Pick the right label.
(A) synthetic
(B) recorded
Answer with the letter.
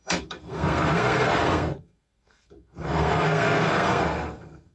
A